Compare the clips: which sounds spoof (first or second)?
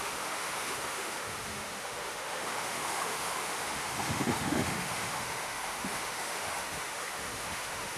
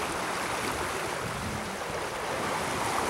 first